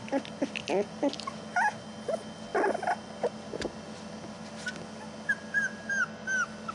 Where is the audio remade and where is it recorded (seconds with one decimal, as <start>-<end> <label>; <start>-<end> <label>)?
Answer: 0.0-6.7 recorded